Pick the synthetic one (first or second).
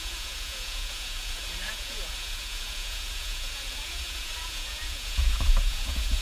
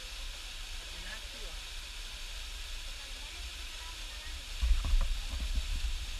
first